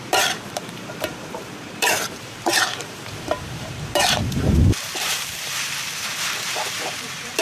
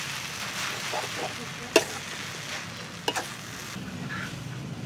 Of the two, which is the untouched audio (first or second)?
second